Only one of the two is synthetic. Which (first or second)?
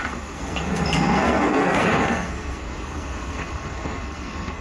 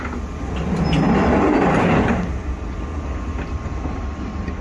first